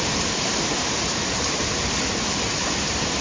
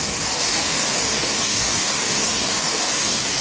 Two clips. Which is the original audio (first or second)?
first